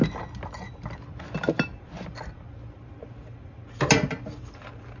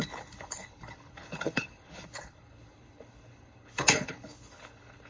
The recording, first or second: first